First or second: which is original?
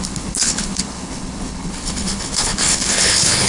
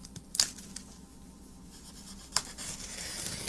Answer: second